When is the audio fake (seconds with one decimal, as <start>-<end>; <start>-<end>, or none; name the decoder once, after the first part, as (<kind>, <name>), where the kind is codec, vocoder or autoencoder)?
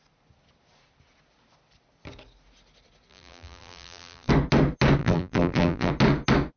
3.1-4.3 (vocoder, BigVGAN v2); 5.0-5.9